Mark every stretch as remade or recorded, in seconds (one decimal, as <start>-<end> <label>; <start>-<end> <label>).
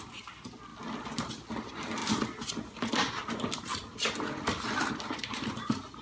0.0-6.0 recorded